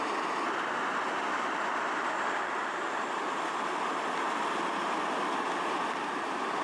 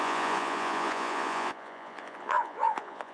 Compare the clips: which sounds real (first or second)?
first